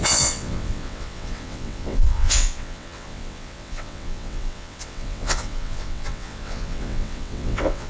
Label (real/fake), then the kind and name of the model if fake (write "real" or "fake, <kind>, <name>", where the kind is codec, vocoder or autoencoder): fake, vocoder, WaveNeXt